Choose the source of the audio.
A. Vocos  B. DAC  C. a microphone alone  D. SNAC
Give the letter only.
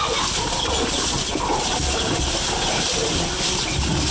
C